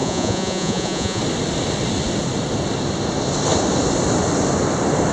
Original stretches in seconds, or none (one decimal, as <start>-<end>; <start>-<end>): 1.2-5.1